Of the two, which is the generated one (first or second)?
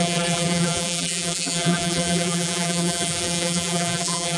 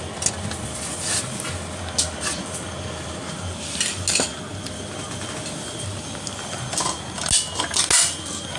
first